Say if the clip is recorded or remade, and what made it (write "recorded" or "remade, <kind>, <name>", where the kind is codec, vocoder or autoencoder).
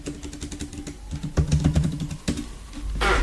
recorded